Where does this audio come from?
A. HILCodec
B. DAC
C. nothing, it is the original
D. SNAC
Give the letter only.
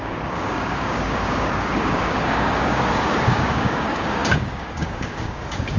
B